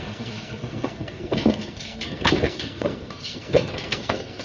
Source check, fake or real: fake